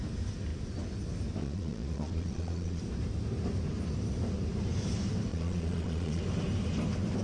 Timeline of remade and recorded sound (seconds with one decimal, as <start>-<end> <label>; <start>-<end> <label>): 0.0-1.4 recorded; 1.4-2.8 remade; 2.8-5.3 recorded; 5.3-6.2 remade; 6.2-7.2 recorded